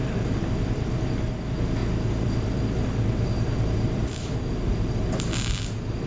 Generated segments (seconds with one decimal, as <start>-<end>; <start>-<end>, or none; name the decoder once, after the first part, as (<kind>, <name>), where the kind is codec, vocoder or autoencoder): 1.8-5.0 (vocoder, BigVGAN v2)